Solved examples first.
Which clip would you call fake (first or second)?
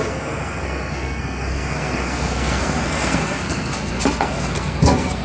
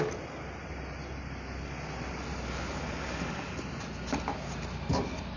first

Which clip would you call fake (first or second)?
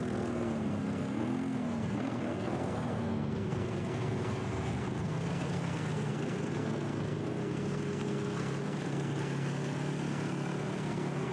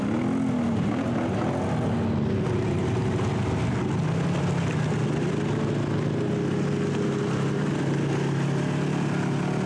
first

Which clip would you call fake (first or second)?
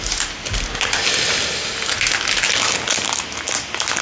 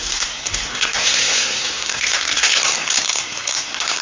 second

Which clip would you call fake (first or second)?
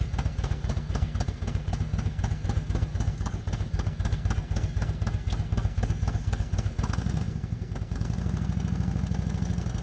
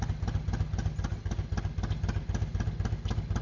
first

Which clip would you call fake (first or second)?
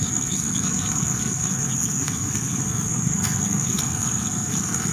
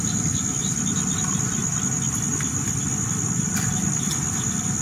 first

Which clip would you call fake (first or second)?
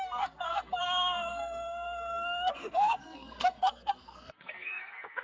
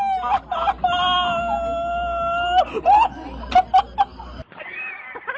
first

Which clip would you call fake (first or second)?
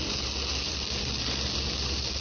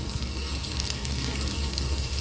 second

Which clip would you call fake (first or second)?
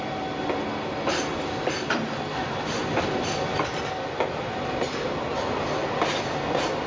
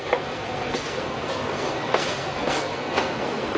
second